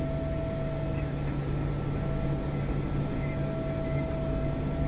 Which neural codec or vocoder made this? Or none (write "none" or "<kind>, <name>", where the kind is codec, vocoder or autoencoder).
none